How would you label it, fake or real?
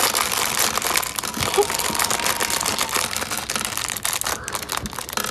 real